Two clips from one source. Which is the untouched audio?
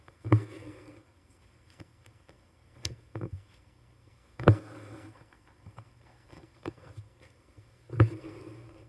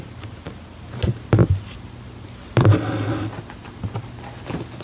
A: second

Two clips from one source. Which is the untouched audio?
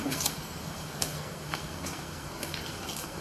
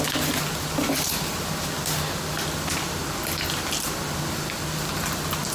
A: second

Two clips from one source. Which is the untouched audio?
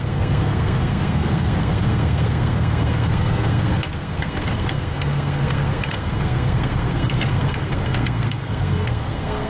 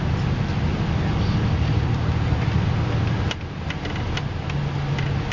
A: second